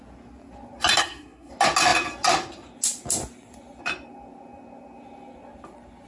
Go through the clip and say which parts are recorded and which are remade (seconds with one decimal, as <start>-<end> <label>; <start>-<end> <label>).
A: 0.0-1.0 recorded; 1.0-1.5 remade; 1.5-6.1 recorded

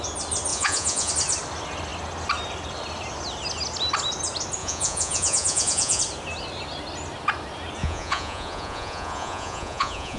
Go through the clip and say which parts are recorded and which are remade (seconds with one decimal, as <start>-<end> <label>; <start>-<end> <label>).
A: 0.0-0.5 recorded; 0.5-1.1 remade; 1.1-4.6 recorded; 4.6-6.0 remade; 6.0-7.8 recorded; 7.8-10.2 remade

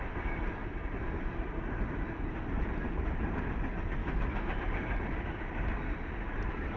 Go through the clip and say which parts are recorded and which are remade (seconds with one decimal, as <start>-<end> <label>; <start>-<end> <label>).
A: 0.0-4.0 recorded; 4.0-4.6 remade; 4.6-6.8 recorded